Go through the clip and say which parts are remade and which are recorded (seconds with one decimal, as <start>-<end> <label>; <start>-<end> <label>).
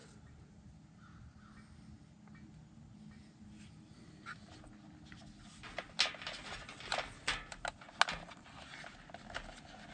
0.0-9.9 recorded